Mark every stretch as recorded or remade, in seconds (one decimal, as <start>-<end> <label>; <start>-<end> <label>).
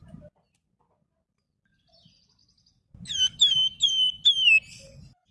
0.0-5.3 recorded